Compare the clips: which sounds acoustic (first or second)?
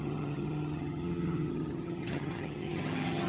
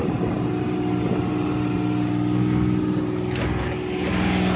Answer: second